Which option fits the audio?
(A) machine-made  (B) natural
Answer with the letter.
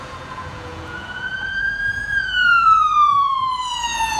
A